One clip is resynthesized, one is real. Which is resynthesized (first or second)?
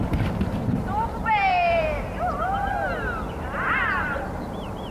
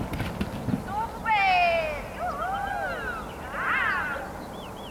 first